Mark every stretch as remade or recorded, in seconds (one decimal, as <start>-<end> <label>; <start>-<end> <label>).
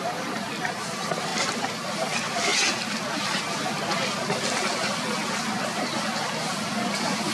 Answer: 0.0-7.3 recorded